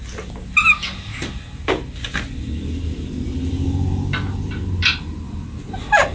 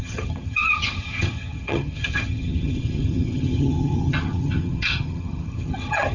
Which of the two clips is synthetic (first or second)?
second